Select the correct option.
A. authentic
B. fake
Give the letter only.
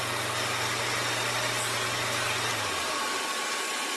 A